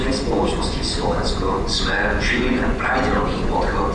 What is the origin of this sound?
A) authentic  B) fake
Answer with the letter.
B